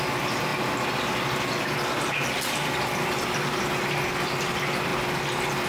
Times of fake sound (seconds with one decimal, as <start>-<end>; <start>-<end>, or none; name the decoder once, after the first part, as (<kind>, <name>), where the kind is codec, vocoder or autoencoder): 0.0-4.9 (vocoder, BigVGAN v2)